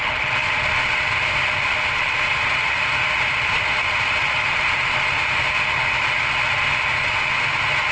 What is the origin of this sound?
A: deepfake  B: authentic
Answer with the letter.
B